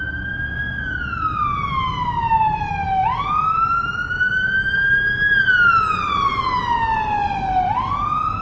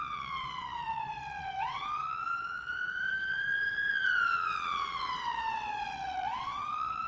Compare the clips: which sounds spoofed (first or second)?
second